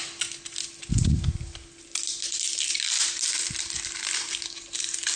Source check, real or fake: real